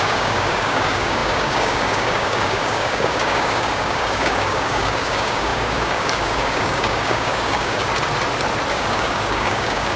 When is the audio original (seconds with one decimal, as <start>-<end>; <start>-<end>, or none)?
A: 7.9-8.7

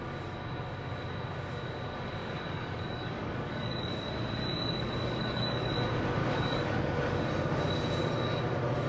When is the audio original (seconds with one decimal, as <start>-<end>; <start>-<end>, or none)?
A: 0.0-2.2; 4.1-4.5; 5.7-6.2; 7.0-8.9

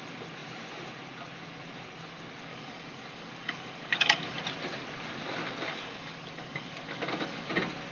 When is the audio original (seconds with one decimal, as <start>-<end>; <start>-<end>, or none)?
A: 0.0-2.5; 4.4-5.7; 7.5-7.9

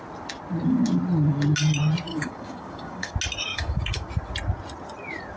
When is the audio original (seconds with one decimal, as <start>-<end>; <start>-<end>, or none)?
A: 0.0-2.1; 3.1-3.5; 4.1-5.4